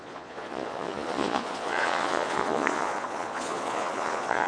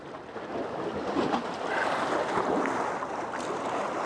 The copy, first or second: first